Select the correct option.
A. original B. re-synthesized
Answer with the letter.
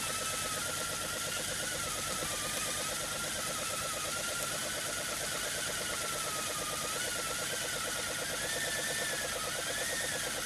A